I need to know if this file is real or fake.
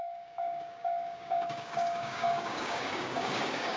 fake